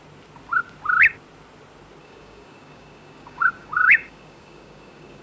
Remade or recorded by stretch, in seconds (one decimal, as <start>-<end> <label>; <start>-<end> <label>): 0.0-2.0 recorded; 2.0-5.2 remade